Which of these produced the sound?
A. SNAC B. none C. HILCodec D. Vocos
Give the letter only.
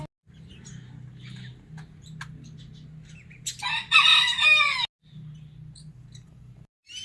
B